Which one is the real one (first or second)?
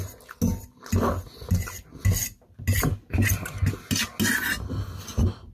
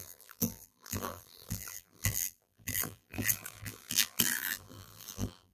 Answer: first